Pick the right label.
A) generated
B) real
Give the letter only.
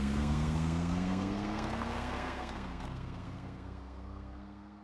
A